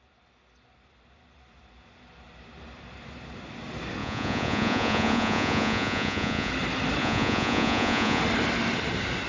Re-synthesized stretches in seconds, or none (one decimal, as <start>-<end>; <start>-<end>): 4.0-6.5; 7.0-8.2